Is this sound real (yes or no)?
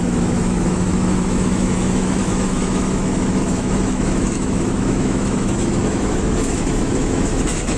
no